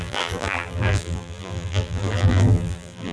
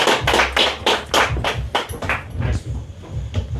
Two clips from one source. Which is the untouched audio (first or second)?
second